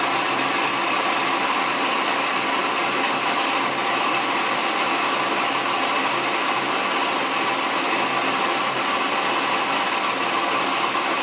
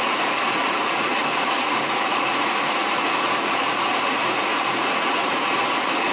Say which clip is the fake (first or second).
second